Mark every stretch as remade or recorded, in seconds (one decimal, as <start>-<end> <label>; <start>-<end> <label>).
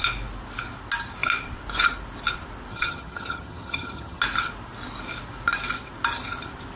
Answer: 0.0-2.7 recorded; 2.7-4.2 remade; 4.2-6.8 recorded